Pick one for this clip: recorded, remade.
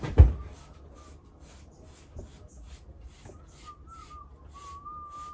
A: recorded